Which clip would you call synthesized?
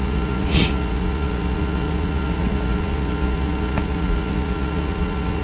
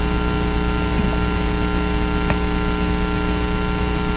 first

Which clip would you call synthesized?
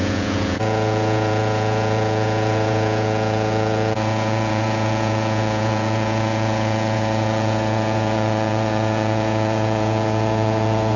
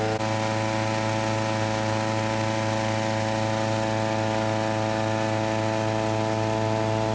first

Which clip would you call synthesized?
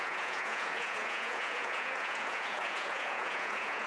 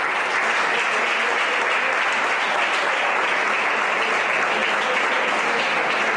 first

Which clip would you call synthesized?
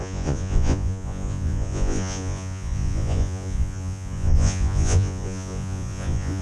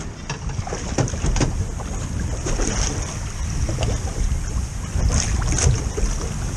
first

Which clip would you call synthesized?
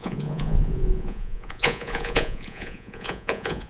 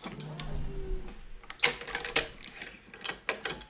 first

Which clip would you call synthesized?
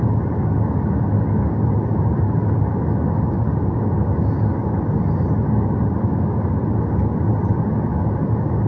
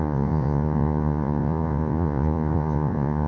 second